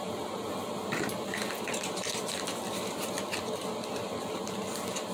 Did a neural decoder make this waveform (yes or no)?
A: no